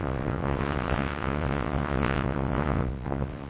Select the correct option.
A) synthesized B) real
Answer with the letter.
A